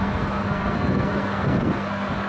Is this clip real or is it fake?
fake